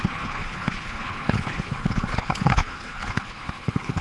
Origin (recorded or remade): remade